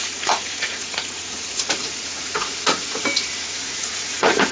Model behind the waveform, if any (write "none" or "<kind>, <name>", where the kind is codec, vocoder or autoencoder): vocoder, Vocos